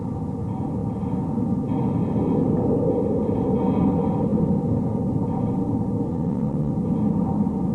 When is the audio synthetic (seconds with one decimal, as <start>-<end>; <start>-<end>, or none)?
6.1-6.7